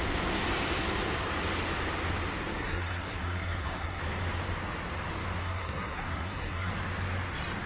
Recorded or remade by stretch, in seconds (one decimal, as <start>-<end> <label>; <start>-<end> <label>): 0.0-2.6 recorded; 2.6-4.0 remade; 4.0-5.4 recorded; 5.4-6.7 remade; 6.7-7.7 recorded